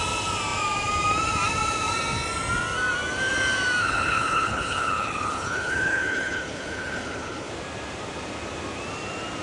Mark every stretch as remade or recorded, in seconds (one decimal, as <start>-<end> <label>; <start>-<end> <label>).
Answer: 0.0-3.8 recorded; 3.8-7.5 remade; 7.5-9.4 recorded